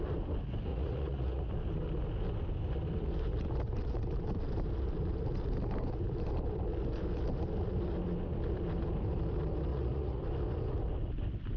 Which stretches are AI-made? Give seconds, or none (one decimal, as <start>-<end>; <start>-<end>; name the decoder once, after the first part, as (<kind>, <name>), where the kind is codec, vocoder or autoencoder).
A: 0.7-1.5 (vocoder, Vocos); 9.7-10.2